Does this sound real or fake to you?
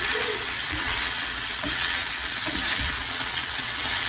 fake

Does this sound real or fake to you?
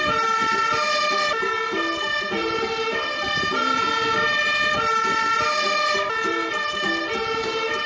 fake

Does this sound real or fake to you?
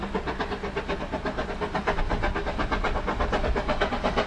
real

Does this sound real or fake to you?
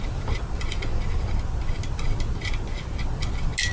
real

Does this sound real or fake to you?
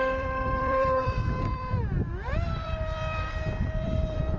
fake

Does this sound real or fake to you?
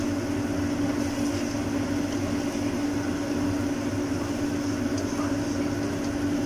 real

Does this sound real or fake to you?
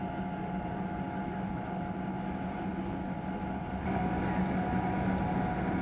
real